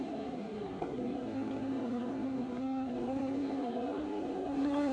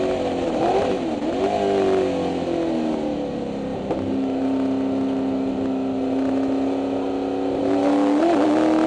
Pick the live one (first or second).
second